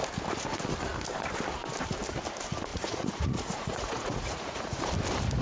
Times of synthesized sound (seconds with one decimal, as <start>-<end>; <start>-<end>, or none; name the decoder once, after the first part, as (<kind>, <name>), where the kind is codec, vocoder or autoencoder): 2.7-4.9 (vocoder, Vocos)